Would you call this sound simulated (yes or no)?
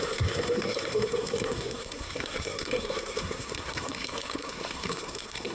yes